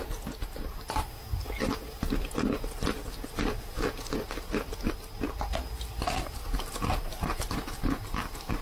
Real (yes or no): yes